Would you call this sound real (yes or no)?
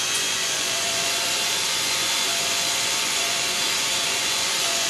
no